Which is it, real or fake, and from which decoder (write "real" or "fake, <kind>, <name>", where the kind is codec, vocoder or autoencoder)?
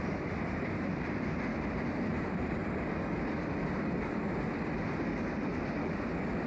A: real